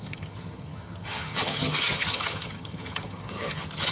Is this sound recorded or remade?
remade